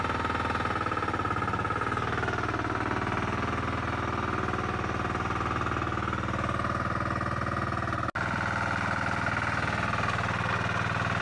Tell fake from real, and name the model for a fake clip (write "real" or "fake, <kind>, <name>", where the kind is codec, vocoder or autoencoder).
real